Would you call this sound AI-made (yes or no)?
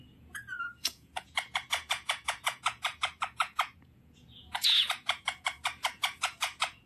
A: yes